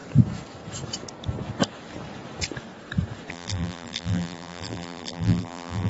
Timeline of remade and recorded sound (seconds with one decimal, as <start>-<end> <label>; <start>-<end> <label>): 0.0-3.3 recorded; 3.3-5.9 remade